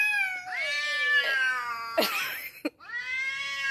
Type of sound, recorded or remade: recorded